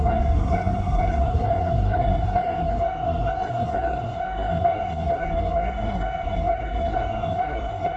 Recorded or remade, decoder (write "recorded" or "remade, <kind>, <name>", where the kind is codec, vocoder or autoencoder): remade, codec, SNAC